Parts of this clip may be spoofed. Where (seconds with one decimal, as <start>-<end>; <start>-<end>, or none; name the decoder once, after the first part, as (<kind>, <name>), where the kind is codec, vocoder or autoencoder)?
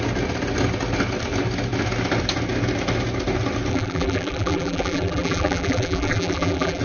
3.7-6.8 (vocoder, BigVGAN v2)